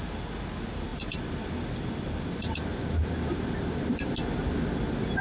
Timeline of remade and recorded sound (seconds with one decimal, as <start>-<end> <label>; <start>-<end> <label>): 0.0-5.2 recorded